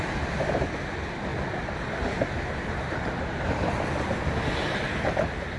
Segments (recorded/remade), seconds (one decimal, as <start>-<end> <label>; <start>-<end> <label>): 0.0-1.3 recorded; 1.3-1.9 remade; 1.9-5.6 recorded